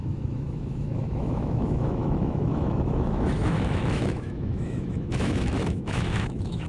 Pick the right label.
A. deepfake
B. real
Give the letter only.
A